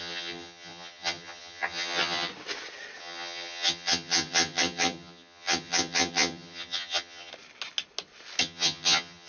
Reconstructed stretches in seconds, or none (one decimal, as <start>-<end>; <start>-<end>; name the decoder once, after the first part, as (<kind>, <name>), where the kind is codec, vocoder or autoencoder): 0.0-2.3 (vocoder, HiFi-GAN); 3.0-7.3; 8.4-9.3